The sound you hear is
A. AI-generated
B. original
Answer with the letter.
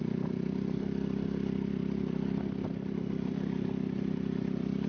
B